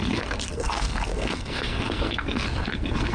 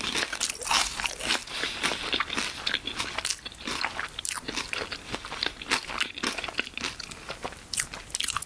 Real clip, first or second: second